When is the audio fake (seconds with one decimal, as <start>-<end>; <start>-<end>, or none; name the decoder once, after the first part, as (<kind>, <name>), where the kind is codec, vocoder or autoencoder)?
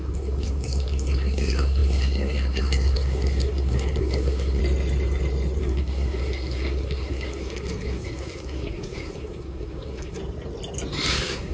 0.0-4.6 (codec, SNAC); 5.6-10.2; 11.1-11.5